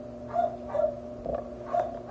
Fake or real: real